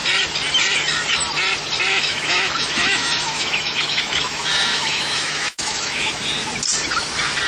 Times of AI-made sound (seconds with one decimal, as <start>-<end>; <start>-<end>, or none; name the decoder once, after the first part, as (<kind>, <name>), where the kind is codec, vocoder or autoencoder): 1.9-6.1 (autoencoder, DAC-VAE)